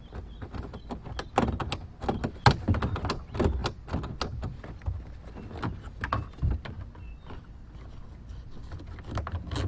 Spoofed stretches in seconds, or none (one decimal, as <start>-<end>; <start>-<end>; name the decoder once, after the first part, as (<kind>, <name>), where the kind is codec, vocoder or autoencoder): none